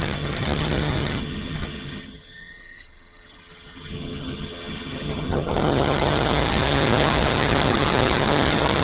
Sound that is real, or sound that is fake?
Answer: fake